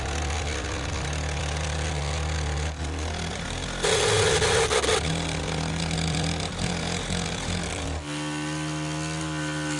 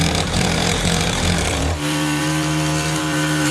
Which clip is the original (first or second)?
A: first